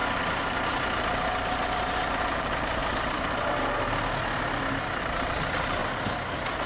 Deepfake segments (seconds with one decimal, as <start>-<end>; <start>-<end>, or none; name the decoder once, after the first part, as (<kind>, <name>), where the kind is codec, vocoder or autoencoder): 2.4-2.8 (vocoder, BigVGAN v2); 5.0-5.8